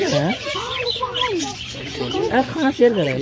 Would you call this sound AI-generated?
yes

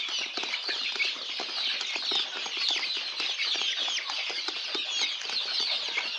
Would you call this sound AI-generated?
no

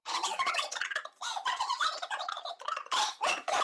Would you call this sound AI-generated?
yes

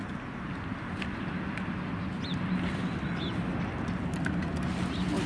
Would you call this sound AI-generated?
no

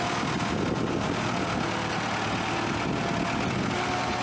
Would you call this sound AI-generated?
no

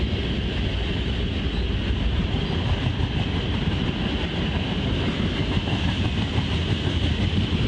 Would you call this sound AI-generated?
no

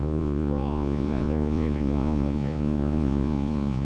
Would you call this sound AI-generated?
yes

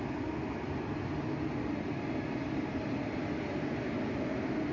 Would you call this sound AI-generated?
no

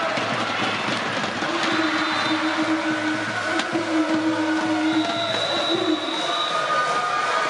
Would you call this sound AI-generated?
no